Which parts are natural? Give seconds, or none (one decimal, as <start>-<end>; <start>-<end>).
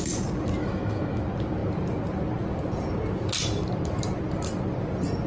0.0-0.6; 1.2-5.3